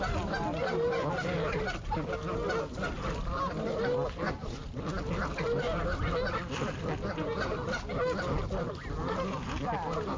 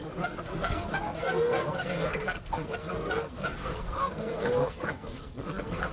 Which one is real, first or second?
first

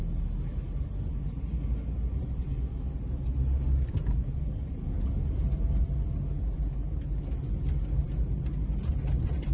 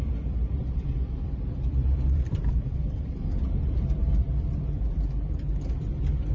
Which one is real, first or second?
first